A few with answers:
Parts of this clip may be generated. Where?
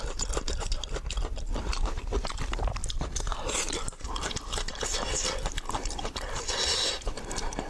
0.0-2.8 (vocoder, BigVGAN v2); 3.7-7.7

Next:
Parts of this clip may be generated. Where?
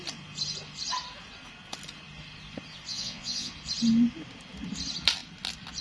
2.9-3.5 (vocoder, Vocos)